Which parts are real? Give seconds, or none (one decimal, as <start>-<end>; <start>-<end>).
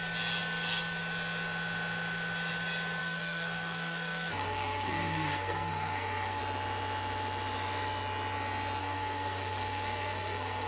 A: 0.0-3.0; 6.4-8.8